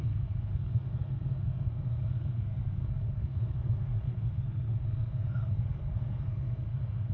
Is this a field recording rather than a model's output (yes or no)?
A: no